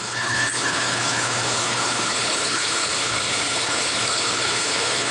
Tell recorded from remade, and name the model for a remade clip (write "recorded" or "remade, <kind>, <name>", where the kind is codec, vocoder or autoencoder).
remade, codec, HILCodec